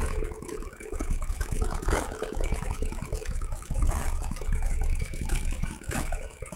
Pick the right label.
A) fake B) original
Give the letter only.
A